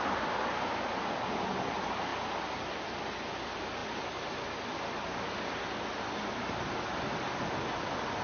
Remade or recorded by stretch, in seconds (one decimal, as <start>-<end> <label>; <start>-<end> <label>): 0.0-8.2 recorded